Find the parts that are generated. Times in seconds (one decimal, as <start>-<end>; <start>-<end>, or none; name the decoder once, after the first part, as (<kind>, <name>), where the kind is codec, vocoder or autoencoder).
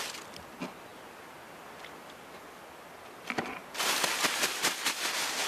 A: none